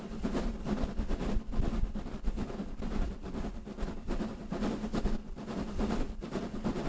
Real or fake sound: fake